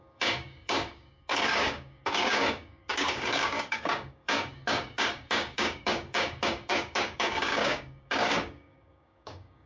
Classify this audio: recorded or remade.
remade